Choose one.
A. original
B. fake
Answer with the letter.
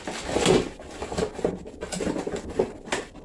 A